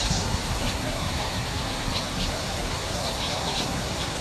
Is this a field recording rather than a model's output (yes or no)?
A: no